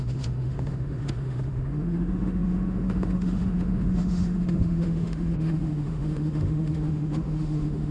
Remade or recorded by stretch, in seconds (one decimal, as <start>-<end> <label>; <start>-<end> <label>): 0.0-7.9 remade

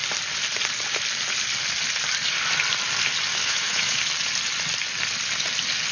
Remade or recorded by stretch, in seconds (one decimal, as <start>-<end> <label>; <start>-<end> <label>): 0.0-3.3 recorded; 3.3-4.0 remade; 4.0-5.9 recorded